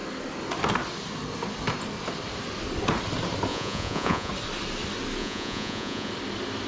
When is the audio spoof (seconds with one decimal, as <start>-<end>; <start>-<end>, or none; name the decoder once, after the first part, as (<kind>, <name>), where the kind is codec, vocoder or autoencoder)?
3.5-4.3 (vocoder, Vocos); 5.2-6.1